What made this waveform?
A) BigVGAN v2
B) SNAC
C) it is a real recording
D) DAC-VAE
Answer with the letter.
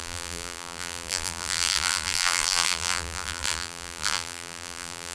A